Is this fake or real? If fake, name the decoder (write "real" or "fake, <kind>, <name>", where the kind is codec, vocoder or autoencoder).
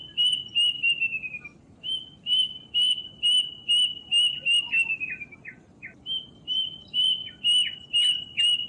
real